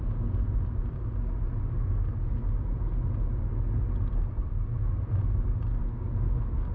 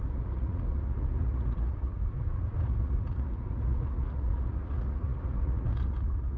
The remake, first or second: second